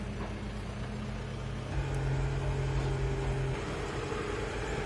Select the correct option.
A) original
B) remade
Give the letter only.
A